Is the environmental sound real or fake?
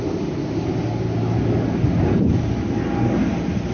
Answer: real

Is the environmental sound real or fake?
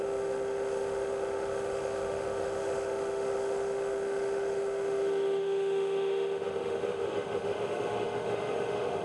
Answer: fake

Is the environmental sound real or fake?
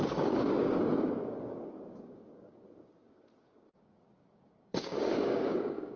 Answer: fake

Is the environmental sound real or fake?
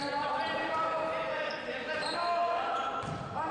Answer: fake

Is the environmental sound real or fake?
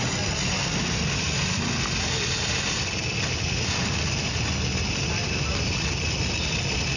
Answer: real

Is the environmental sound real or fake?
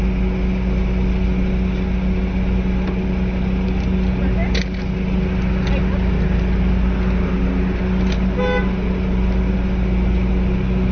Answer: real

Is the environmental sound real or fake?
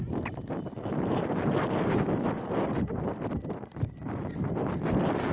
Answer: real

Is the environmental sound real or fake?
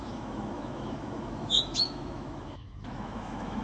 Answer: fake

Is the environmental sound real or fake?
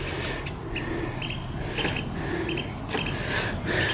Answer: real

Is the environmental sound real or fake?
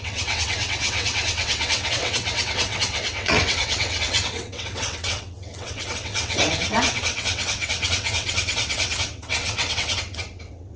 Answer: fake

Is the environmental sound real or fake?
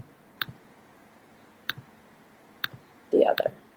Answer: fake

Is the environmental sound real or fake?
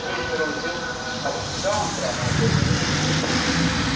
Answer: real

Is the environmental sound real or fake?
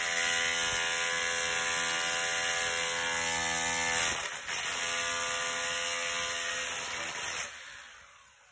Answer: real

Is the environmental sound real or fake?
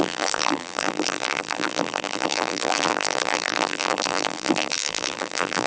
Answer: fake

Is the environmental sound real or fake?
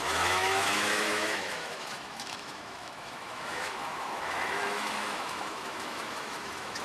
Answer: fake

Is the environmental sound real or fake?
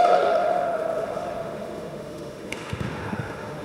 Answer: fake